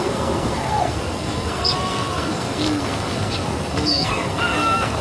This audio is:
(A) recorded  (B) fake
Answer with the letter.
B